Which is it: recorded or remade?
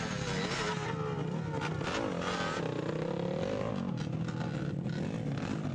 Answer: recorded